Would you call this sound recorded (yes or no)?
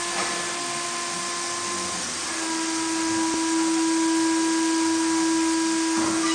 yes